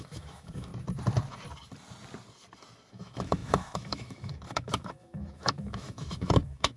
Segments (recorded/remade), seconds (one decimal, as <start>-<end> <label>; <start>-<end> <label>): 0.0-0.7 remade; 0.7-2.9 recorded; 2.9-6.8 remade